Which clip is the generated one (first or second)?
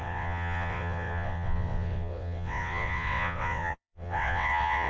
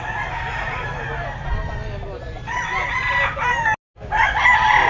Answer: first